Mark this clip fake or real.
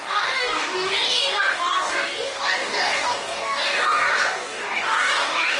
fake